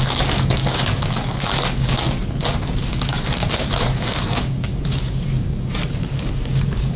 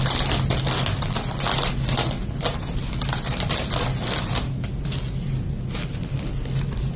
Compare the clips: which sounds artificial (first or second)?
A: first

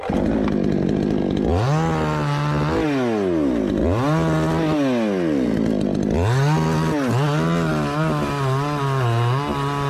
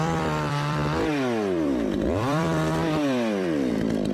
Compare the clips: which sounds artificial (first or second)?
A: second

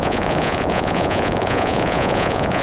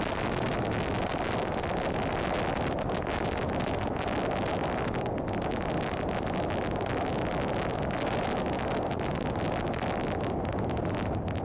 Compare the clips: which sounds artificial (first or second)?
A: first